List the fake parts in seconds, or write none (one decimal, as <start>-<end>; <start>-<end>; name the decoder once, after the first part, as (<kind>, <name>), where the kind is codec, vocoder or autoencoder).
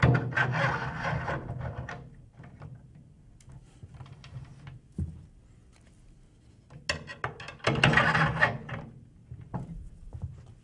0.8-2.9 (vocoder, BigVGAN v2); 9.2-10.1